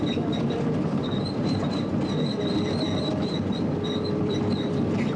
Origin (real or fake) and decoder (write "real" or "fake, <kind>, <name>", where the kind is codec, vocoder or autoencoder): fake, vocoder, BigVGAN v2